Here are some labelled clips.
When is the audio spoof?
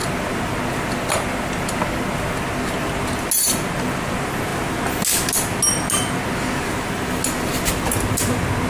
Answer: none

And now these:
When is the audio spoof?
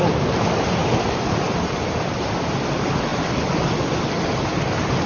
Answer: none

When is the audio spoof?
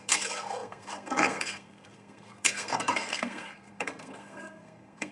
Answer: 0.0-5.1 (codec, SNAC)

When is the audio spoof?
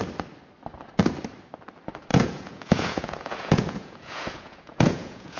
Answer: 2.1-5.4 (vocoder, Vocos)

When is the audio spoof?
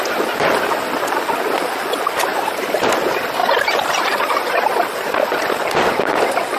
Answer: 2.3-2.9 (vocoder, BigVGAN v2); 3.4-4.5